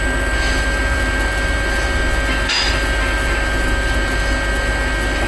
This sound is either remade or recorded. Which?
recorded